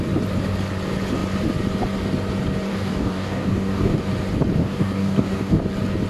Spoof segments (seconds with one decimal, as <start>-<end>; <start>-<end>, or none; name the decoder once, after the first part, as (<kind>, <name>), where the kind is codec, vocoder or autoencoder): 2.7-4.0 (codec, DAC); 4.6-5.6